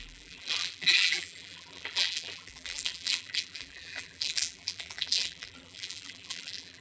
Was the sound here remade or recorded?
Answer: remade